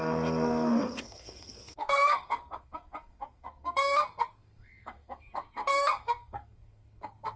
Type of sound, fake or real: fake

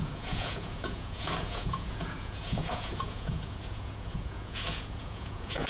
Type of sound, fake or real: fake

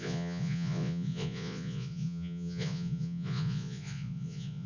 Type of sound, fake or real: fake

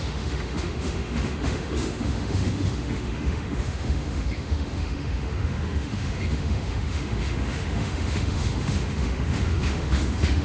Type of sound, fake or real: fake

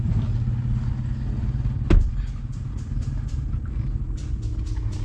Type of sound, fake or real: real